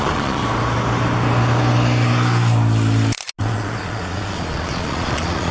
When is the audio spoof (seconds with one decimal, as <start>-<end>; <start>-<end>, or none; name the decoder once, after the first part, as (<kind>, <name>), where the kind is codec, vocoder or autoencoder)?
0.0-0.4 (vocoder, Vocos); 3.4-5.5